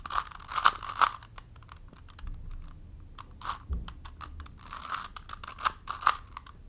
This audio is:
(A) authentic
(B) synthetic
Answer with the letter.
A